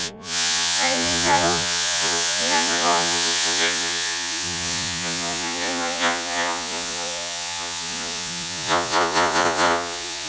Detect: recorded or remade remade